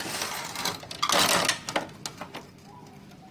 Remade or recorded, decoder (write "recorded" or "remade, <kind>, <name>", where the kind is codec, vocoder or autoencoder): recorded